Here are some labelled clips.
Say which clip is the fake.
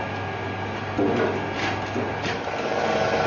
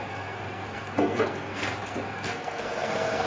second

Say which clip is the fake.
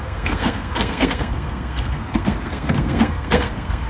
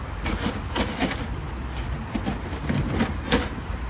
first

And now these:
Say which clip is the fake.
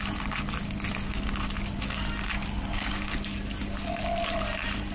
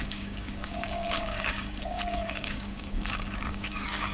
second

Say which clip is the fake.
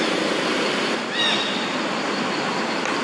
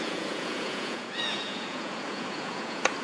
second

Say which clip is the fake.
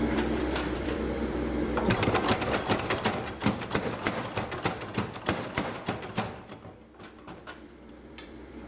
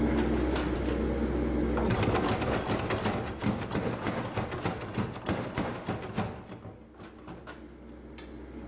first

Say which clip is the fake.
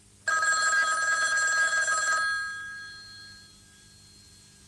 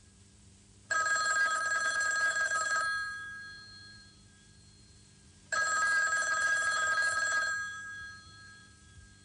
second